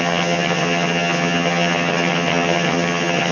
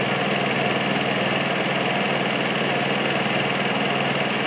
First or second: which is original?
second